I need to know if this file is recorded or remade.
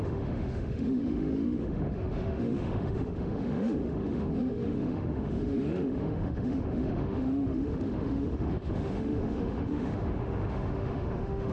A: remade